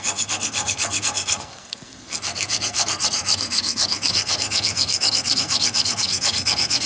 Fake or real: fake